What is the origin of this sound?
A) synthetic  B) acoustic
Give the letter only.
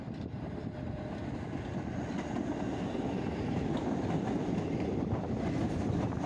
B